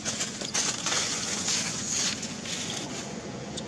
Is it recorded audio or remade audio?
remade